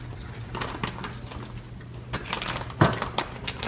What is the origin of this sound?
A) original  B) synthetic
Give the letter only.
A